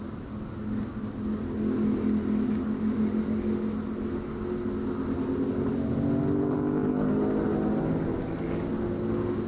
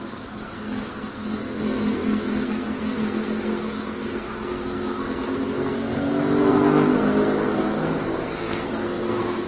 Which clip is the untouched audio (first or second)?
first